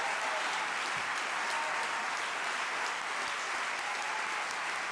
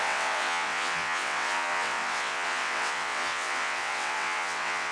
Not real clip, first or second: second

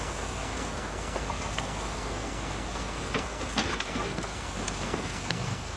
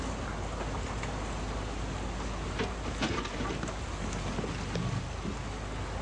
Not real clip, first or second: first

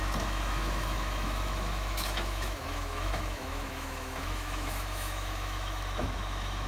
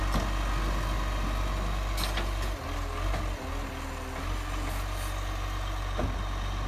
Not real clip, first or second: first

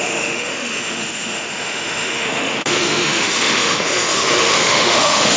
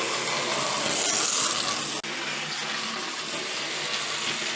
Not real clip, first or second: first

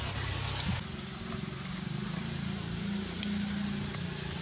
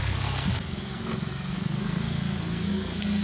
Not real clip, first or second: second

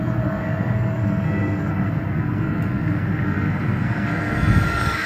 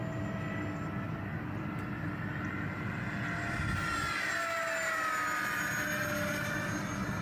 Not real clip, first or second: first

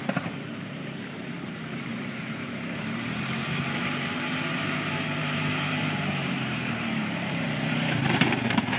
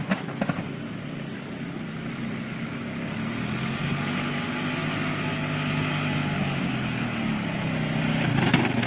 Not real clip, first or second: first